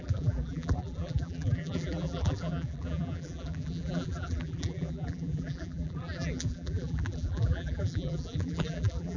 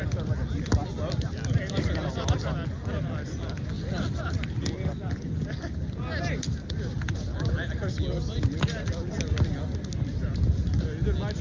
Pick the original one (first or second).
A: second